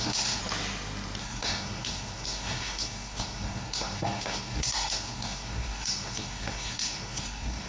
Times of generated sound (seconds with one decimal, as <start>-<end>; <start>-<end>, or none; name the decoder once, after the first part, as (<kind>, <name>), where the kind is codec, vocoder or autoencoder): 0.0-0.4 (codec, SNAC); 1.2-7.7